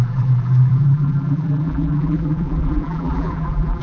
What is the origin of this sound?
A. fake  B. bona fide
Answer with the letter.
A